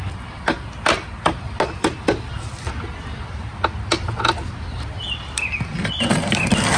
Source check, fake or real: real